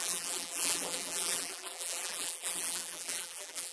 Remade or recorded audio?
remade